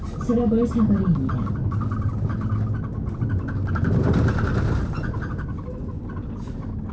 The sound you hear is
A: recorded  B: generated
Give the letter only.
A